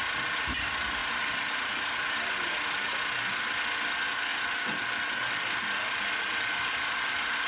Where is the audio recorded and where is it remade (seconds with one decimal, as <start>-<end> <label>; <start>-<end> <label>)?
0.0-7.5 recorded